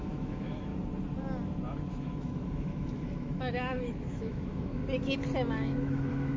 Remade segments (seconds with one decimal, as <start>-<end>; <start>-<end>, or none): 0.0-0.7; 1.9-4.8; 5.5-6.4